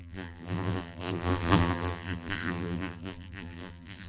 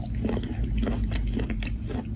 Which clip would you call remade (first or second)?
first